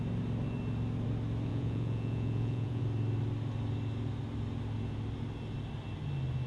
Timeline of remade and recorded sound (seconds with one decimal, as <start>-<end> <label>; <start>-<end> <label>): 0.0-1.5 recorded; 1.5-2.8 remade; 2.8-6.5 recorded